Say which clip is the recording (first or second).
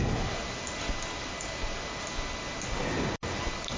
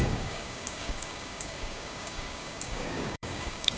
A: first